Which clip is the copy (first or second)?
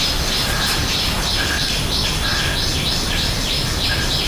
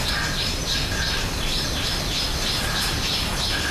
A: first